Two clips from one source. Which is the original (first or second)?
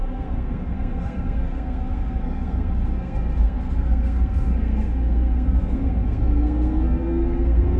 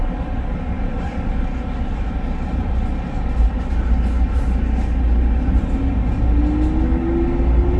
second